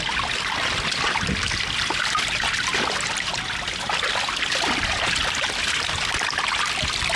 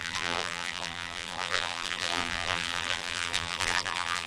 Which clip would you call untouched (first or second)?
first